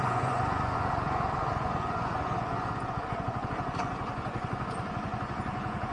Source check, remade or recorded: remade